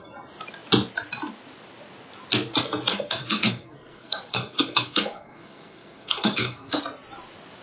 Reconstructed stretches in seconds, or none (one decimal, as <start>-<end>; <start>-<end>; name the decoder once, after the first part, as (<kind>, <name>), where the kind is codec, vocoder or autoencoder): 2.9-6.8 (codec, SNAC)